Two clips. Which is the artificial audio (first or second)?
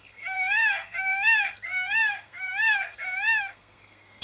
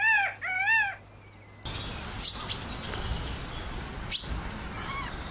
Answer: first